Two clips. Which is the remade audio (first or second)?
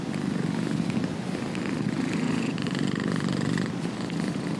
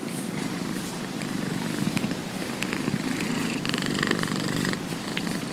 second